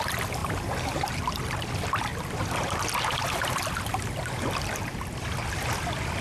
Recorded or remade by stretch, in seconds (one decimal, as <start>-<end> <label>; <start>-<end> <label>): 0.0-0.4 recorded; 0.4-1.2 remade; 1.2-6.2 recorded